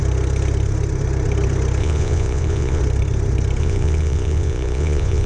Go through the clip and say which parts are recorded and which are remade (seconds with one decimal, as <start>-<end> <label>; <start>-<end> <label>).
0.0-1.8 recorded; 1.8-2.8 remade; 2.8-3.6 recorded; 3.6-5.3 remade